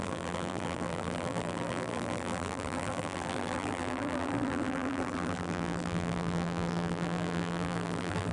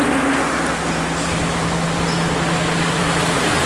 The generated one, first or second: first